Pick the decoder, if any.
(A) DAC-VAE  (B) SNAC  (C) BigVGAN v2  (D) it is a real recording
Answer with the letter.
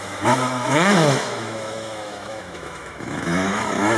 A